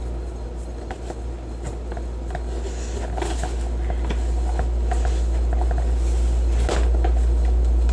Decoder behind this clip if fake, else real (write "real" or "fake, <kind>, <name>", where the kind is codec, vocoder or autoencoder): real